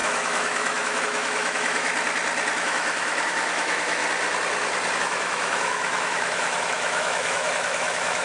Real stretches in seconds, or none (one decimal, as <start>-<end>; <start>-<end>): 1.9-2.6; 4.0-5.0